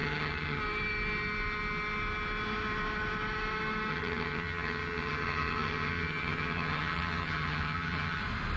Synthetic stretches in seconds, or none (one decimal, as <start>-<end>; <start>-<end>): 0.0-0.6; 3.9-8.2